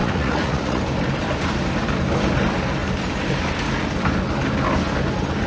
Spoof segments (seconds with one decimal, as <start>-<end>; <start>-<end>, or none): 0.0-0.8